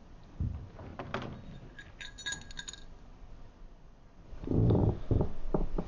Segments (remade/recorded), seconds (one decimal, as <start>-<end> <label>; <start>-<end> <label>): 0.0-0.5 recorded; 0.5-0.9 remade; 0.9-4.2 recorded; 4.2-4.8 remade; 4.8-5.5 recorded; 5.5-5.9 remade